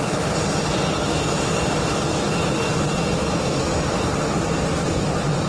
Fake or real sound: real